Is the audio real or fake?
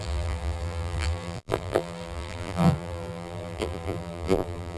fake